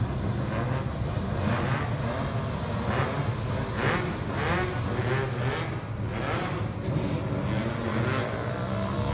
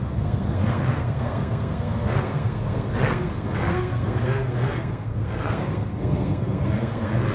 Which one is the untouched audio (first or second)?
first